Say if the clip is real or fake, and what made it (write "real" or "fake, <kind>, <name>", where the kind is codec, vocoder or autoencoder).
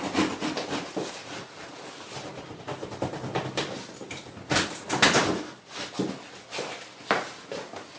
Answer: real